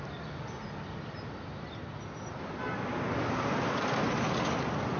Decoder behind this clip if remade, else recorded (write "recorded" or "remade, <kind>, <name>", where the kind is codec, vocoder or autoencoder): recorded